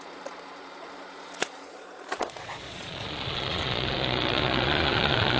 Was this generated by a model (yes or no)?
yes